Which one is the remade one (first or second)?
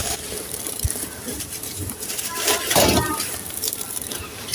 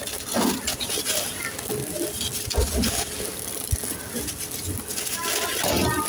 first